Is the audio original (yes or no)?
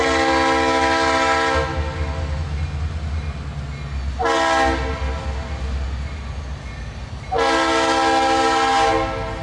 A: yes